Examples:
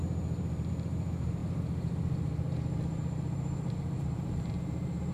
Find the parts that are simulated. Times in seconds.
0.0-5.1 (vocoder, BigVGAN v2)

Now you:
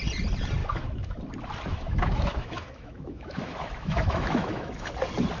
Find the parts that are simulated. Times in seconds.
0.6-1.2 (autoencoder, DAC-VAE); 1.7-4.9

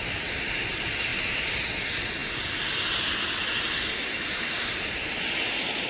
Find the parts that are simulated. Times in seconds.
none

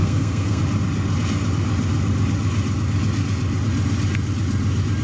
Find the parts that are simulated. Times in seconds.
0.0-0.6 (codec, SNAC)